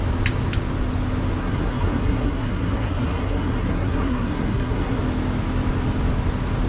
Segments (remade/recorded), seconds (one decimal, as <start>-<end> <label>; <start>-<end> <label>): 0.0-1.4 recorded; 1.4-5.0 remade; 5.0-6.7 recorded